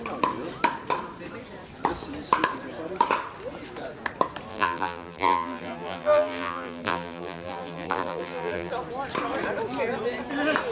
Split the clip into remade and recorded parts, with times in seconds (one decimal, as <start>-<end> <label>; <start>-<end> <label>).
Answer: 0.0-4.5 recorded; 4.5-8.7 remade; 8.7-10.7 recorded